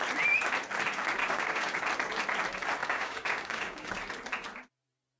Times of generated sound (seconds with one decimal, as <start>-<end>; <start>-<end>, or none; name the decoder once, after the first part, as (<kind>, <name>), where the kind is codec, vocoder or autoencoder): 1.2-1.8 (codec, DAC); 2.8-3.9